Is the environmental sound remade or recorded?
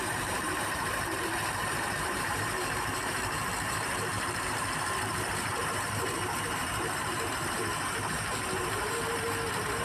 remade